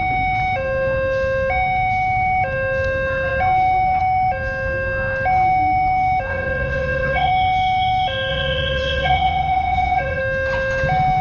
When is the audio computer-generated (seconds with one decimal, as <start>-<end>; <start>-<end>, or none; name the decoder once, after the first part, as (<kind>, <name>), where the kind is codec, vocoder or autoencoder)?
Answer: 6.3-7.3 (vocoder, WaveNeXt); 8.3-10.2